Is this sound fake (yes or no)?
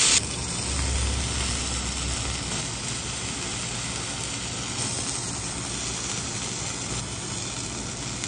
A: no